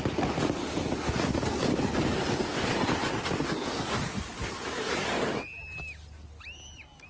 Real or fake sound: real